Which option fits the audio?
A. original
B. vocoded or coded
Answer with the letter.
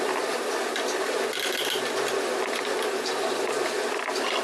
A